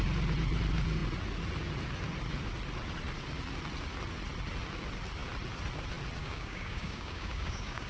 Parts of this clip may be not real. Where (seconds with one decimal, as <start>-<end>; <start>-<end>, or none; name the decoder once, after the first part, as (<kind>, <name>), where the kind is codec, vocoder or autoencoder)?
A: 6.2-7.9 (codec, DAC)